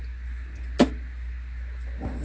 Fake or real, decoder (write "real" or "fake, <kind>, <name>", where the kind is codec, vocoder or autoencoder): real